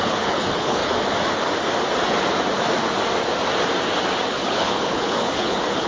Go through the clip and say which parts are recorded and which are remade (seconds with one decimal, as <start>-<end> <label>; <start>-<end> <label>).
0.0-0.8 remade; 0.8-4.3 recorded; 4.3-5.9 remade